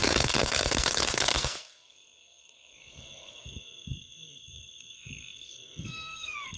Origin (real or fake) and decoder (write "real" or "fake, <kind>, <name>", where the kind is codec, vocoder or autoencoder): fake, codec, SNAC